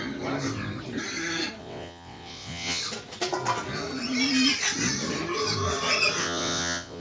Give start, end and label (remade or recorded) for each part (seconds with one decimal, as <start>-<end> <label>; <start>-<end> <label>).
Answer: 0.0-1.6 recorded; 1.6-2.8 remade; 2.8-6.2 recorded; 6.2-7.0 remade